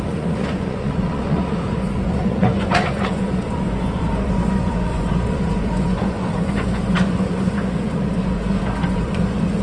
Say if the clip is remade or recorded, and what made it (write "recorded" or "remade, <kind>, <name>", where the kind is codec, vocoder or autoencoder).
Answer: remade, vocoder, Vocos